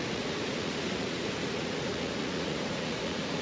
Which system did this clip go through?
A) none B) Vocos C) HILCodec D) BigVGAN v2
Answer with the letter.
B